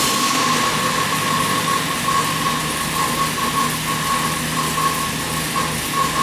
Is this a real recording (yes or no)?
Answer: yes